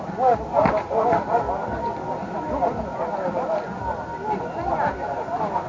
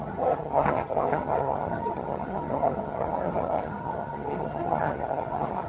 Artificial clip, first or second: second